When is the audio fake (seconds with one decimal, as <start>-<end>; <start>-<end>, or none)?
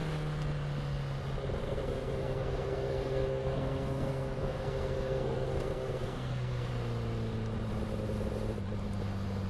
1.6-6.7